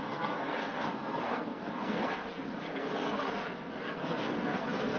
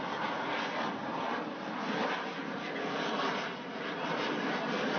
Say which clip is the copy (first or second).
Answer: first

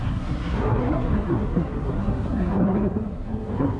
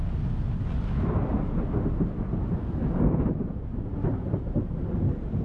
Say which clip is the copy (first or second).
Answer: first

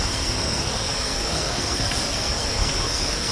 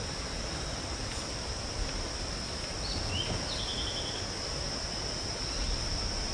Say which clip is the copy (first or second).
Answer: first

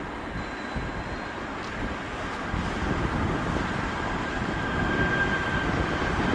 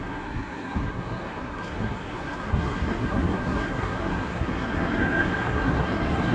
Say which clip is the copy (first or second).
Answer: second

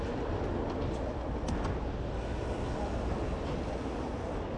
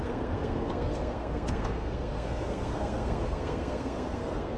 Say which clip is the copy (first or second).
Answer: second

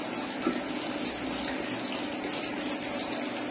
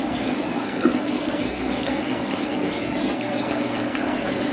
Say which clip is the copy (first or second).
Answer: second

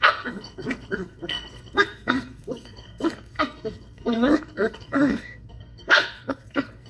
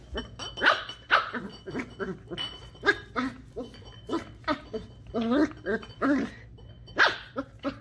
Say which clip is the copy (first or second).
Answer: first